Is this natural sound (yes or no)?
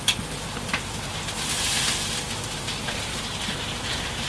yes